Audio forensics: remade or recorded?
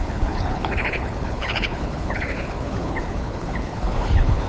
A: remade